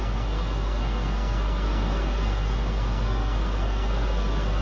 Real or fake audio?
fake